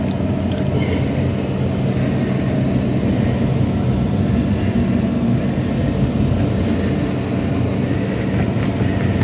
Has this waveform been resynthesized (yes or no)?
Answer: no